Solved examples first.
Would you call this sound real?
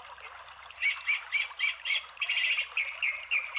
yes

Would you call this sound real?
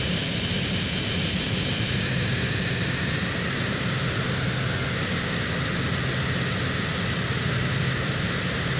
yes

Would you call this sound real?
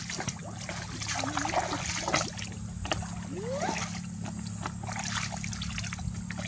yes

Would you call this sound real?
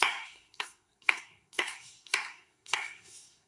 no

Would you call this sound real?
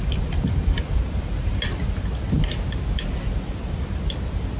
yes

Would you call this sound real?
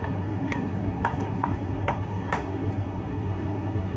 no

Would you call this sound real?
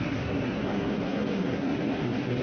no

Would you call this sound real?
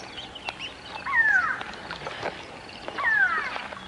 yes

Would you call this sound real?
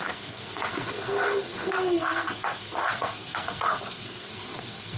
no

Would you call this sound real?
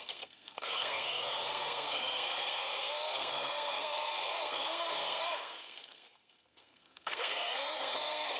no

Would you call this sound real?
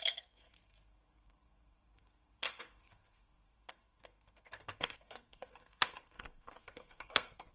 no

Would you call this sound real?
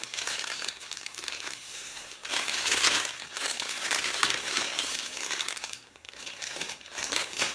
no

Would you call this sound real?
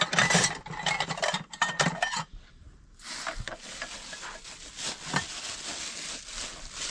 yes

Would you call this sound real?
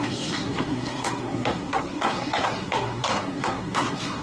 no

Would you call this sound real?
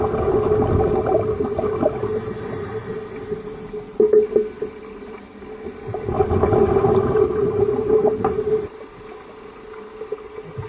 yes